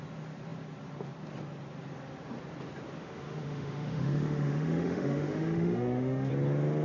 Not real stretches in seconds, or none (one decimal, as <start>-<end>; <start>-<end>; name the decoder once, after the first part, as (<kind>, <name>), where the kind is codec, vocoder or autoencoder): 3.0-6.3 (autoencoder, DAC-VAE)